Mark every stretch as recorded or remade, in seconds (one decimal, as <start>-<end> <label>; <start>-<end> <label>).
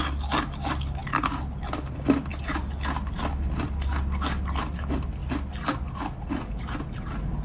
0.0-7.4 recorded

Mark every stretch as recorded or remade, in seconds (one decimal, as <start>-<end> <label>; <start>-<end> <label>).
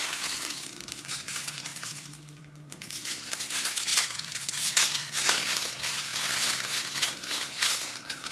0.0-8.3 remade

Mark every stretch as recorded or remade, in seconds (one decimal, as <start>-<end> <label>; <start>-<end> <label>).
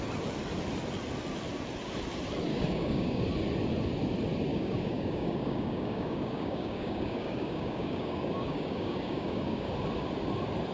0.0-2.5 recorded; 2.5-3.2 remade; 3.2-4.5 recorded; 4.5-9.7 remade; 9.7-10.7 recorded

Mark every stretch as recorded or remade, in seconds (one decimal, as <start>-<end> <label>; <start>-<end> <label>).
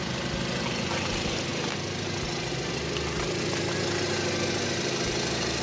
0.0-5.6 recorded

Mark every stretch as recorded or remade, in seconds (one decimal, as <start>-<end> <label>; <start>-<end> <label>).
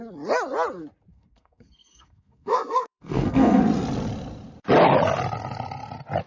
0.0-1.1 recorded; 1.1-3.6 remade; 3.6-6.3 recorded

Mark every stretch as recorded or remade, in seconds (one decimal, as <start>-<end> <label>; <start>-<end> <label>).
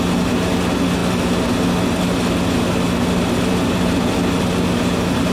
0.0-5.3 recorded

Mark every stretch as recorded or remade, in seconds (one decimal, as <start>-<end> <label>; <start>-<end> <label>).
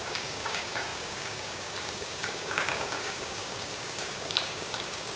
0.0-5.2 remade